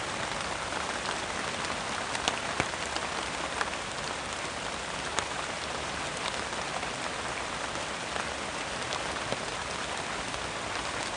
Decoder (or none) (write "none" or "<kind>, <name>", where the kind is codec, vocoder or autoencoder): none